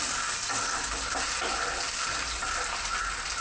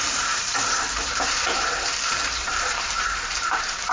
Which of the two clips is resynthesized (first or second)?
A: second